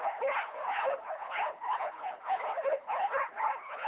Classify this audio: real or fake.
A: fake